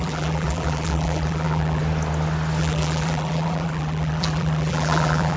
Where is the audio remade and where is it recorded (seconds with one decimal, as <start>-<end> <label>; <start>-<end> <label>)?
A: 0.0-1.8 remade; 1.8-2.6 recorded; 2.6-5.4 remade